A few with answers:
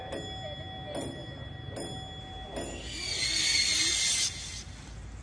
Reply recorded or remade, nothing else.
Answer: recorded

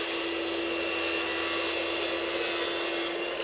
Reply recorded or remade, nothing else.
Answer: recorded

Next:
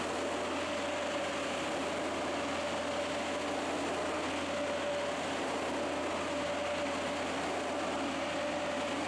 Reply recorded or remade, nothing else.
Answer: recorded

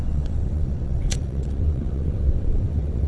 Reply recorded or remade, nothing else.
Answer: remade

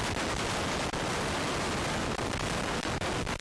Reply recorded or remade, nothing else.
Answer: recorded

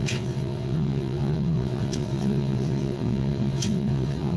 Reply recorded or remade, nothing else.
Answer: remade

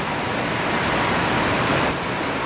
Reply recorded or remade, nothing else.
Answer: recorded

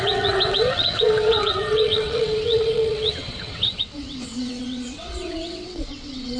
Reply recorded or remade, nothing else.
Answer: remade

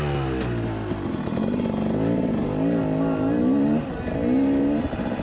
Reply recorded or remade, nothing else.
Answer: recorded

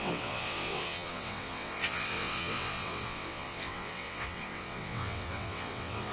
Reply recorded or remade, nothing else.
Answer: remade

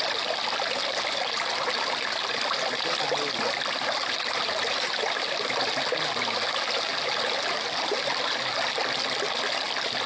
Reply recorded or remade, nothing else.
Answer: recorded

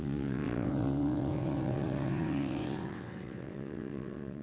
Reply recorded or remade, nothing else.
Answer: remade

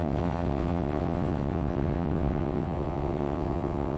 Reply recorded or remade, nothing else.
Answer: remade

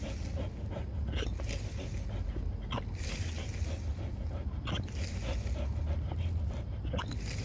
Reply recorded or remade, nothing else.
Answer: recorded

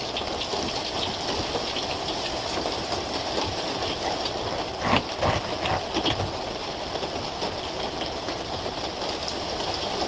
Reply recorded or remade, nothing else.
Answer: recorded